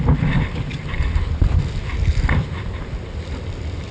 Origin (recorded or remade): recorded